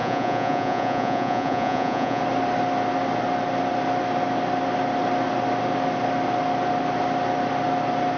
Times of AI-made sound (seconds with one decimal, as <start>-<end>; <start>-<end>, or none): 0.0-2.2